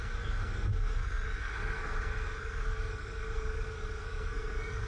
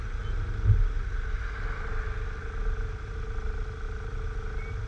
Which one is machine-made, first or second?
first